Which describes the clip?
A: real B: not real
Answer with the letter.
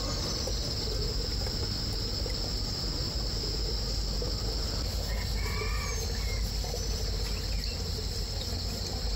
A